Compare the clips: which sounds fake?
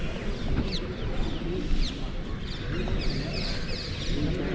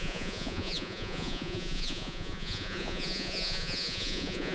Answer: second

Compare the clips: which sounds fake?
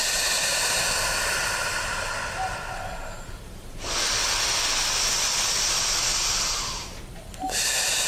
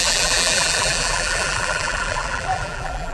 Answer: second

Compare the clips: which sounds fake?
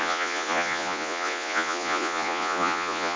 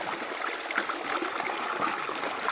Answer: first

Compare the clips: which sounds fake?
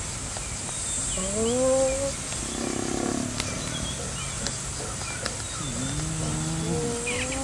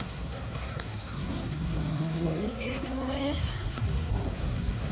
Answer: second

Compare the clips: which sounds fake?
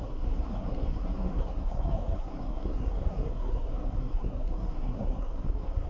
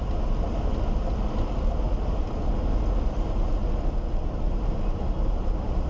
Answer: first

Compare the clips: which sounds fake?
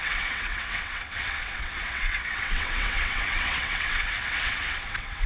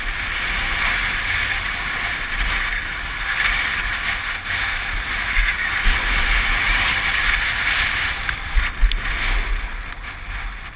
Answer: first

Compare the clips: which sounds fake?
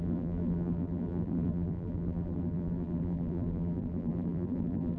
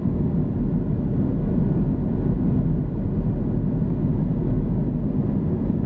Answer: first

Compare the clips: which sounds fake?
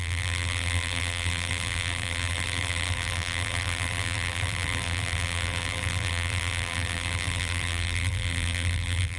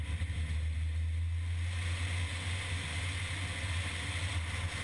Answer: first